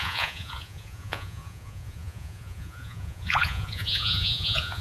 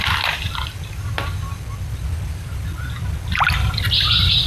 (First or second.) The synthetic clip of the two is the first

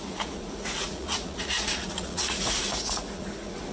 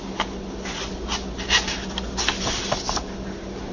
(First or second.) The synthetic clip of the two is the first